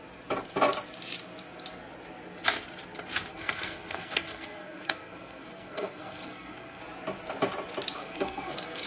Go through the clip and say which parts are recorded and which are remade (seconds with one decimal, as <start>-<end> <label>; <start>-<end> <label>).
0.0-3.3 recorded; 3.3-6.8 remade; 6.8-8.0 recorded; 8.0-8.9 remade